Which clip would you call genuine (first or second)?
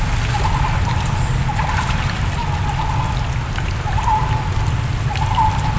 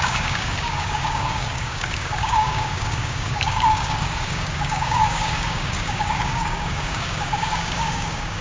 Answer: first